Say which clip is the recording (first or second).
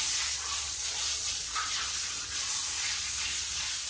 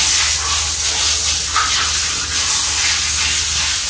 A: second